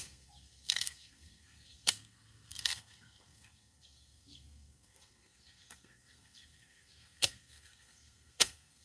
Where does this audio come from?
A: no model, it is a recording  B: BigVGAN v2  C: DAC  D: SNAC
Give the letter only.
D